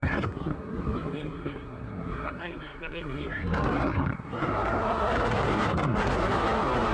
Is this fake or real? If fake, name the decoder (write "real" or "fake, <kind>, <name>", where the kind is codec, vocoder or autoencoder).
fake, codec, SNAC